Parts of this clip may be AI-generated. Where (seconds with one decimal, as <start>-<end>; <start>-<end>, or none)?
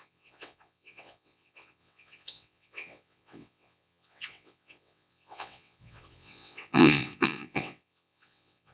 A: 0.0-8.7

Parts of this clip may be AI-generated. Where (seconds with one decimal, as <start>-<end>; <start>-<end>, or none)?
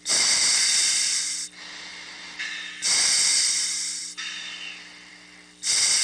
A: none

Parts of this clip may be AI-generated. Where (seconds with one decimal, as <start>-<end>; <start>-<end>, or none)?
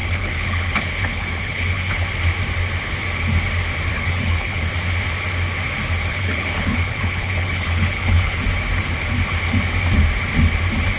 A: 0.0-1.9; 3.9-4.7; 6.1-8.4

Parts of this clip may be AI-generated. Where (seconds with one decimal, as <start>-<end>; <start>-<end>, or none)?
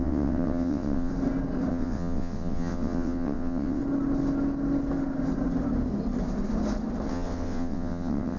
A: 0.0-1.1; 1.7-3.8; 7.1-8.4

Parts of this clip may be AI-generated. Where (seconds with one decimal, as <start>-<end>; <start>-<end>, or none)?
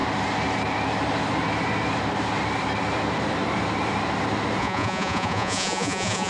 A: 4.6-6.3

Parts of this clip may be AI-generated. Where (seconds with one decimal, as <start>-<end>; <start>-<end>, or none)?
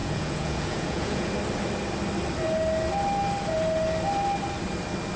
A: 0.0-1.3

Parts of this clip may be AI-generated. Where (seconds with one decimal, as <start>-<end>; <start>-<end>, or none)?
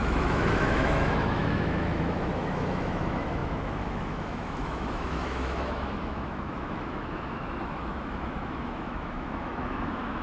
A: 0.0-10.2